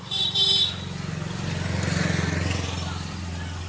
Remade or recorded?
recorded